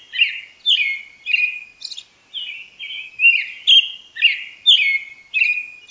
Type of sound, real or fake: real